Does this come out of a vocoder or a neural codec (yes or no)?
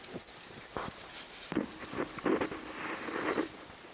no